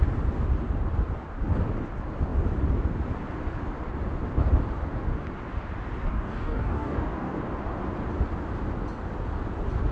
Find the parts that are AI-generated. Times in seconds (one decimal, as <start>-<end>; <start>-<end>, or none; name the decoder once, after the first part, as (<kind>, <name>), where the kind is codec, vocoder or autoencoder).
6.1-7.4 (codec, DAC)